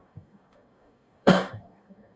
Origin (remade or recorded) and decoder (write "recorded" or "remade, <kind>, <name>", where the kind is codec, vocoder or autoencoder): remade, codec, DAC